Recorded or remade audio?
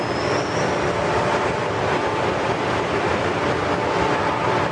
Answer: recorded